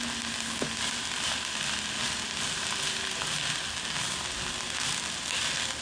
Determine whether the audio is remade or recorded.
recorded